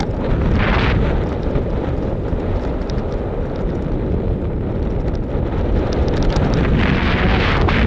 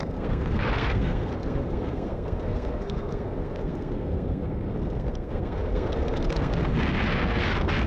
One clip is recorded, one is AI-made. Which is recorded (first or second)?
first